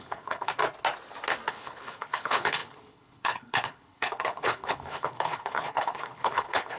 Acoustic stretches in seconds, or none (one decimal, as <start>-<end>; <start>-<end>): 0.5-1.5

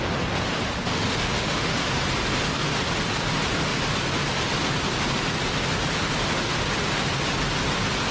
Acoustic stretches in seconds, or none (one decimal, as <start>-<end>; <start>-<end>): 0.0-0.9; 1.9-8.1

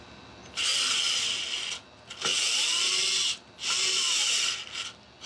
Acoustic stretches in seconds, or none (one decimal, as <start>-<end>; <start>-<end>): 0.0-5.3

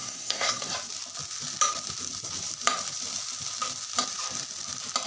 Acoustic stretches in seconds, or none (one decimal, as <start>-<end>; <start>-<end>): 0.6-5.1

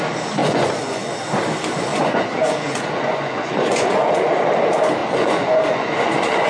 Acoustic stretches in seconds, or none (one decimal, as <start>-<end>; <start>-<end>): 0.0-0.4; 1.1-1.9; 4.1-5.0

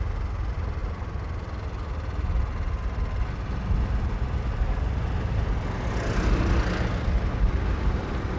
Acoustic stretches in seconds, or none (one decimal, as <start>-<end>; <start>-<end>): 0.0-8.4

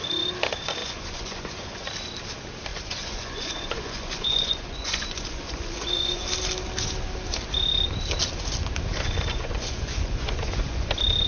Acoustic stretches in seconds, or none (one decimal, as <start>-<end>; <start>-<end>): 0.0-0.8; 1.9-2.7; 6.2-9.3; 10.9-11.3

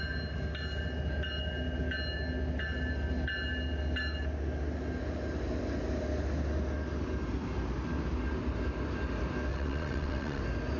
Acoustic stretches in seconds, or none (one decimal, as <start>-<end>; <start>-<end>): 0.0-9.5; 10.4-10.8